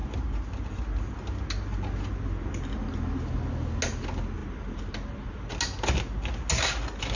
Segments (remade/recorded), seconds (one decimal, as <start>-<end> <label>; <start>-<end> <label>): 0.0-7.2 recorded